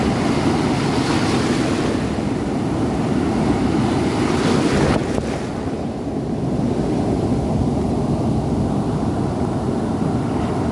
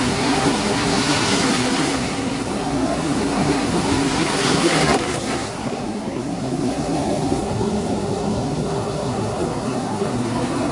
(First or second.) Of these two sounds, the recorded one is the first